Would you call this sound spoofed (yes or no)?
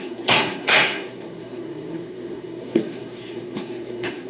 yes